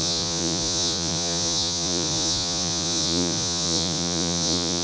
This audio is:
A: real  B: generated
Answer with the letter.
B